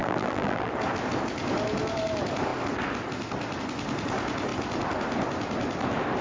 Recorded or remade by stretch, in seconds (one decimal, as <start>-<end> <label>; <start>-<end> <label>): 0.0-0.7 remade; 0.7-6.2 recorded